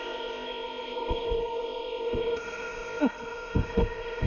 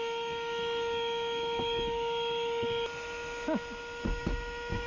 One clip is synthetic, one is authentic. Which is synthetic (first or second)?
first